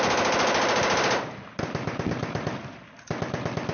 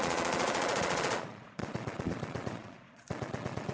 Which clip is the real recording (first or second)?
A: first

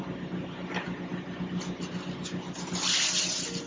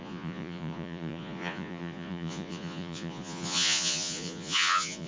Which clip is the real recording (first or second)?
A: first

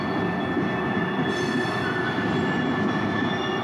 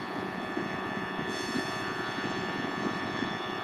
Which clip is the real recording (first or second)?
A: first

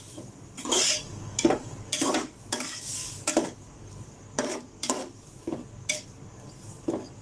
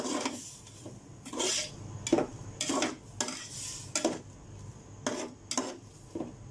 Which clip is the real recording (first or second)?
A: second